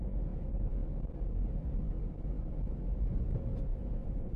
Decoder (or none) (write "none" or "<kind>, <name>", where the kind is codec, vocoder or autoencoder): none